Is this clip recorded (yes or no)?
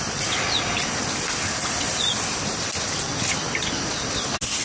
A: yes